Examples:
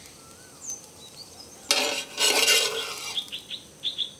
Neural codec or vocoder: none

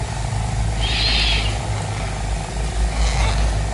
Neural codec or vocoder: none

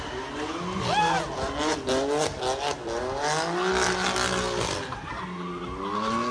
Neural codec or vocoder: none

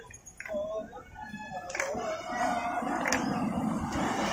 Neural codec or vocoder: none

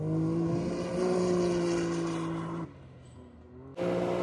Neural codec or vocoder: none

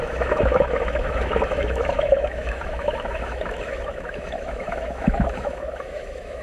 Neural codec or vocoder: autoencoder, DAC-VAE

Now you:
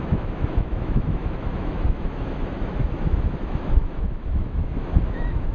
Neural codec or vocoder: autoencoder, DAC-VAE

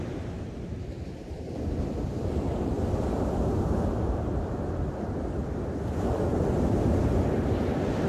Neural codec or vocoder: none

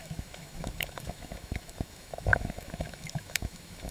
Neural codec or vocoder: autoencoder, DAC-VAE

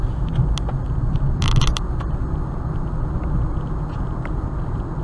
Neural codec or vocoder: none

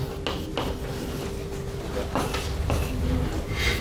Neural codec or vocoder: none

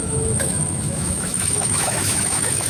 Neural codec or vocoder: autoencoder, DAC-VAE